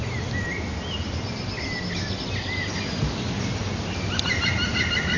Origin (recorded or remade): recorded